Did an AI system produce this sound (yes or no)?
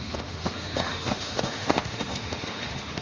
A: yes